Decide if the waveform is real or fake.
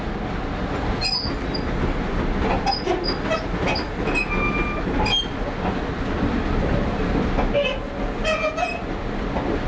real